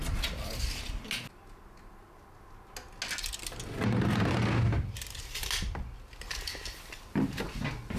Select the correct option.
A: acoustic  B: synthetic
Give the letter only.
A